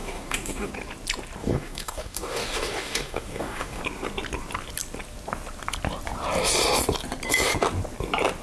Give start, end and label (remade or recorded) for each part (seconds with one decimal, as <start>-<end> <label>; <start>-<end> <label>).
0.0-0.7 remade; 0.7-1.4 recorded; 1.4-3.8 remade; 3.8-8.4 recorded